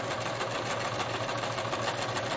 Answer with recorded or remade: recorded